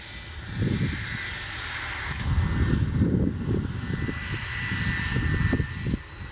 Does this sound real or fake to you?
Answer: real